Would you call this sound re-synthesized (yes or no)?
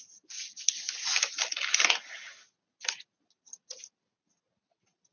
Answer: no